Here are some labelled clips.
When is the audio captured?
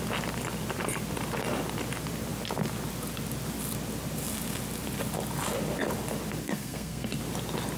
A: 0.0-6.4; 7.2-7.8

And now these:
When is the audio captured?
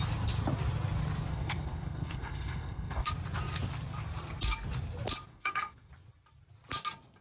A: 0.0-1.3; 3.1-5.3; 5.9-7.2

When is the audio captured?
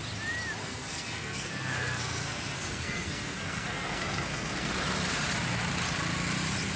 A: 0.0-0.6; 4.7-6.8